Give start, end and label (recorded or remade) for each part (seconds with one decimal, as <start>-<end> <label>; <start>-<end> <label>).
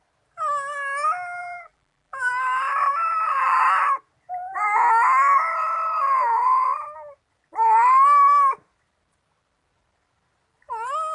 0.0-1.4 recorded; 1.4-2.3 remade; 2.3-2.8 recorded; 2.8-3.6 remade; 3.6-11.1 recorded